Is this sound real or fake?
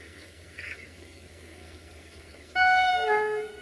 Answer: fake